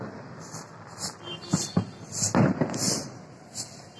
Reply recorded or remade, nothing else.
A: recorded